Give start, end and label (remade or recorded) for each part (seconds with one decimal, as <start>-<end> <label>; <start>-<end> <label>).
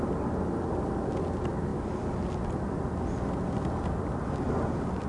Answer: 0.0-5.1 recorded